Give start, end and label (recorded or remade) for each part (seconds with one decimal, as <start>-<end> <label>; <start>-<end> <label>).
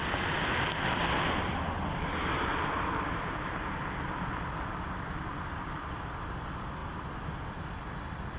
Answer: 0.0-8.4 recorded